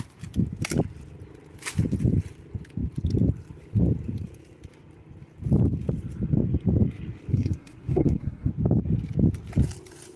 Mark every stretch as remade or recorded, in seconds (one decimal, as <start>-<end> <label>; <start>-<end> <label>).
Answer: 0.0-7.3 recorded; 7.3-8.5 remade; 8.5-10.2 recorded